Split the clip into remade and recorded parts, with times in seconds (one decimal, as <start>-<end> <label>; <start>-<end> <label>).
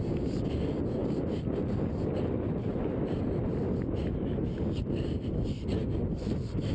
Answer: 0.0-6.7 recorded